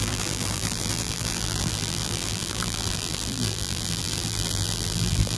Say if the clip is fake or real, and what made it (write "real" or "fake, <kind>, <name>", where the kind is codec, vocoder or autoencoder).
fake, vocoder, BigVGAN v2